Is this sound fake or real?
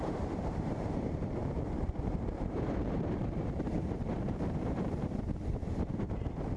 fake